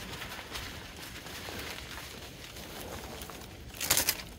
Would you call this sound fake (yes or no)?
no